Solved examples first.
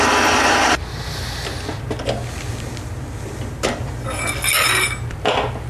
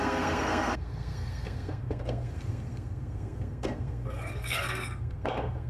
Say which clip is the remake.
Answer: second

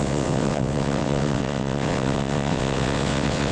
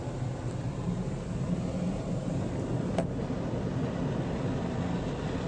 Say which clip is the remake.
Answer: first